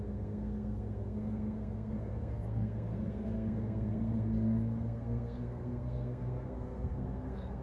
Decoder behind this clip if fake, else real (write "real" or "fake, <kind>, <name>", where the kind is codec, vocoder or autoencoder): fake, codec, SNAC